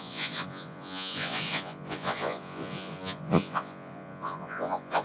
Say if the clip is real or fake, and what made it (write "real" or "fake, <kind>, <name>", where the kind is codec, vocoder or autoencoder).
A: fake, vocoder, Vocos